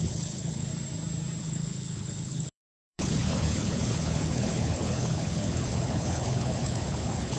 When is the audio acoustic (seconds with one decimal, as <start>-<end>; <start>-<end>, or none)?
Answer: 0.7-1.4

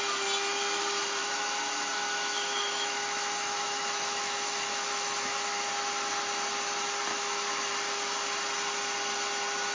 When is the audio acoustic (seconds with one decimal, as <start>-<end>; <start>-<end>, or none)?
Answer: 0.0-1.2; 5.7-7.1; 7.7-9.7

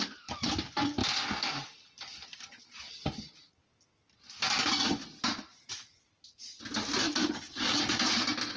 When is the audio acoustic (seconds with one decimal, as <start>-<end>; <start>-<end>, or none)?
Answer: 0.0-7.2; 7.8-8.6

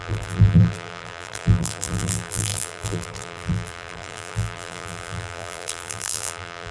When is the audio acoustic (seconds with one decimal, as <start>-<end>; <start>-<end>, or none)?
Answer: none

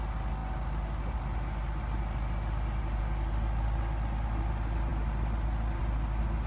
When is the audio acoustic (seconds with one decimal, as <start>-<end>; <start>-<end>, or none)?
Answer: 0.0-6.5

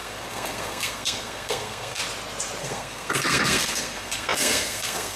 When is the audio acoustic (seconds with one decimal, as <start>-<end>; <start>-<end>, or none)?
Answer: 2.0-2.6

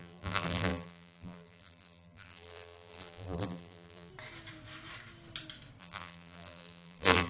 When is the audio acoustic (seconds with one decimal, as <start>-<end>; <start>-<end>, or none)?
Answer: 4.1-5.8